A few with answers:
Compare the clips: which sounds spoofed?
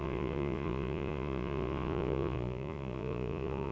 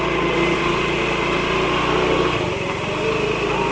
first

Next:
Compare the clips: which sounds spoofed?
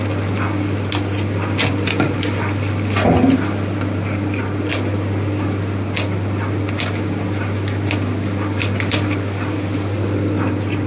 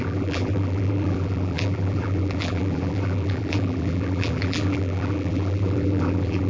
second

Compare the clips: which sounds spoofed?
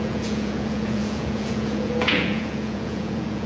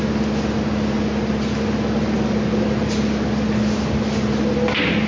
first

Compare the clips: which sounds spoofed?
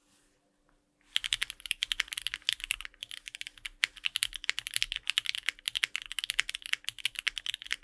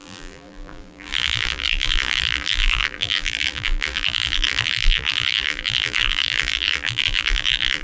second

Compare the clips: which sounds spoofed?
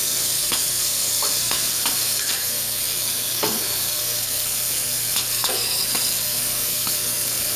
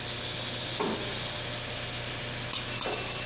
first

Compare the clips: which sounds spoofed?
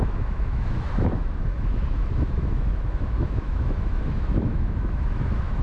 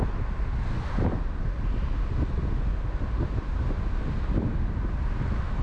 first